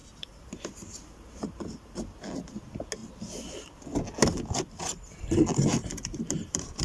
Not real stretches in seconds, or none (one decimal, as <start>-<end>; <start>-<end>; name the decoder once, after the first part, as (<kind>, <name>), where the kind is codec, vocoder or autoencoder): 0.0-0.6 (vocoder, BigVGAN v2); 5.7-6.8